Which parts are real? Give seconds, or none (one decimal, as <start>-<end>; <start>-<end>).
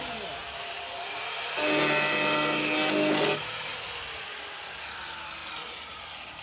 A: 0.0-0.4; 1.4-6.4